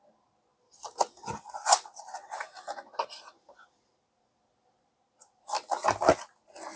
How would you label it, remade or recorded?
recorded